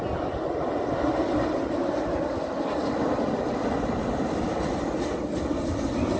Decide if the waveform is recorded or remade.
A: recorded